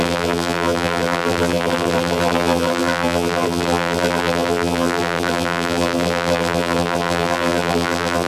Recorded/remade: remade